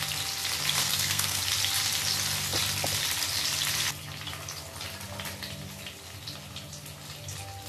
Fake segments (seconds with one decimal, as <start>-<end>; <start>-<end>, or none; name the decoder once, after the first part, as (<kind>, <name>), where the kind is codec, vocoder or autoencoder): 0.8-1.4 (codec, SNAC)